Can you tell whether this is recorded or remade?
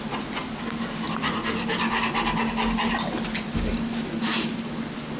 recorded